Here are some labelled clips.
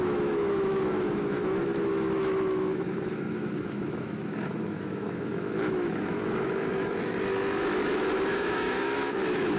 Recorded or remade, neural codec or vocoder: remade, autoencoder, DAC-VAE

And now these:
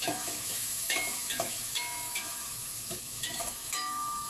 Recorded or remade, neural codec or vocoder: remade, autoencoder, DAC-VAE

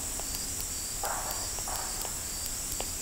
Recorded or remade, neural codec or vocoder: recorded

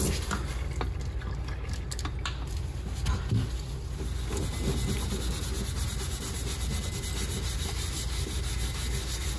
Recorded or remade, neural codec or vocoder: recorded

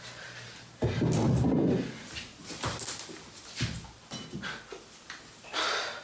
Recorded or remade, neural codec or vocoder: recorded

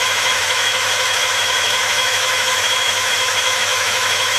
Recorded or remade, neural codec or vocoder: remade, autoencoder, DAC-VAE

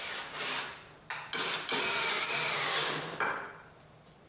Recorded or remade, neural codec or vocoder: recorded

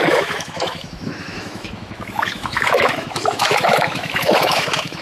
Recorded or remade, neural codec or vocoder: remade, autoencoder, DAC-VAE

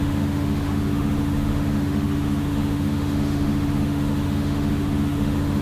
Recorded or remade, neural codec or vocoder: remade, autoencoder, DAC-VAE